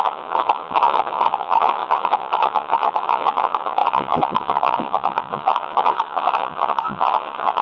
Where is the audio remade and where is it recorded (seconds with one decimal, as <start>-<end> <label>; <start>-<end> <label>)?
0.0-7.6 remade